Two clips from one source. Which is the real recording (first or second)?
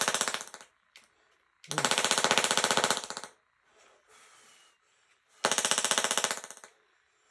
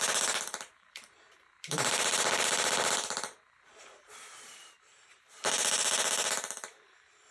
first